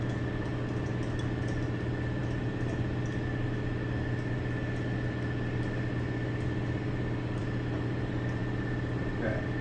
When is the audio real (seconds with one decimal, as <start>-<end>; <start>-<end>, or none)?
0.0-9.6